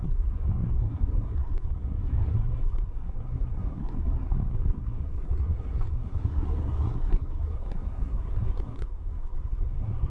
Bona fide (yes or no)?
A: no